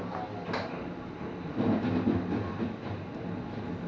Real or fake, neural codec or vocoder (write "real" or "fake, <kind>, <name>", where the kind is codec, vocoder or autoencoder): real